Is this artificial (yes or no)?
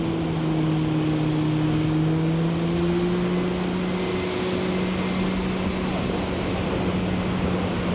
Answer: no